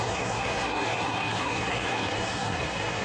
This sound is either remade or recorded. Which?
remade